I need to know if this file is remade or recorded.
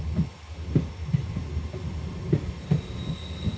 recorded